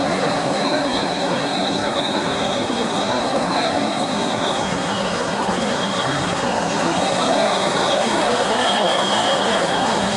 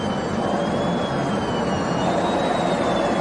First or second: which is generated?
first